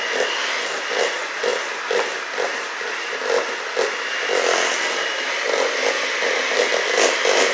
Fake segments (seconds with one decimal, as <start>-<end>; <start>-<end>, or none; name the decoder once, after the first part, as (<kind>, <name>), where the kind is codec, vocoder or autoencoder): none